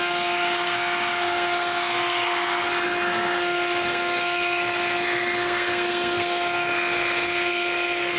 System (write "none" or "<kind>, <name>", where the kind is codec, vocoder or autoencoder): codec, SNAC